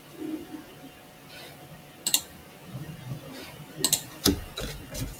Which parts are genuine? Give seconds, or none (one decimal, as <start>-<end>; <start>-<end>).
0.0-5.2